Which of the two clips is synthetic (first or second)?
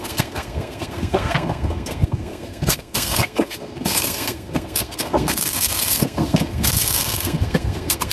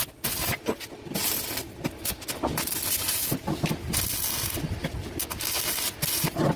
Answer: first